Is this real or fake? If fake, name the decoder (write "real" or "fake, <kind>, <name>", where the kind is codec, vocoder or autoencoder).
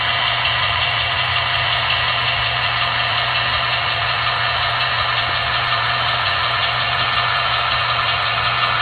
fake, vocoder, Vocos